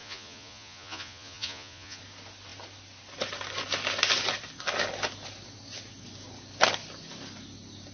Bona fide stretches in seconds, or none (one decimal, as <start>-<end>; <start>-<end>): 2.0-7.9